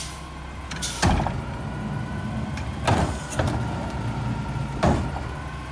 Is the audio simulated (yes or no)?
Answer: no